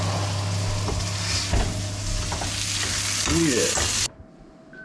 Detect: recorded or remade recorded